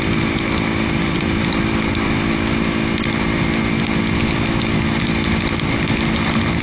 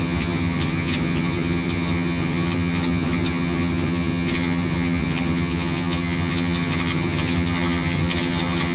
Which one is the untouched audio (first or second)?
first